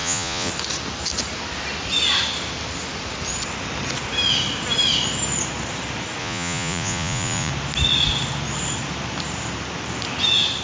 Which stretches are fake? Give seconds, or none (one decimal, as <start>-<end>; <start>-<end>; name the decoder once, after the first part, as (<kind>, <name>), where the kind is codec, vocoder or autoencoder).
0.0-0.5 (vocoder, Vocos); 6.2-7.5